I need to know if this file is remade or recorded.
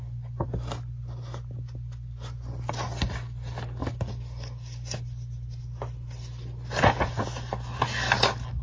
recorded